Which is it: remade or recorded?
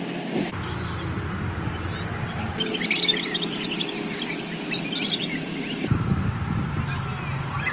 recorded